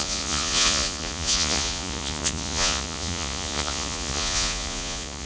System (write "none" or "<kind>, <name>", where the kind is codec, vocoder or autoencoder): vocoder, Vocos